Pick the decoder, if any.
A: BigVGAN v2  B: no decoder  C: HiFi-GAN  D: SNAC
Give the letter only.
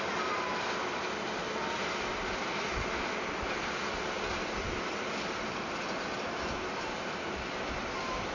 B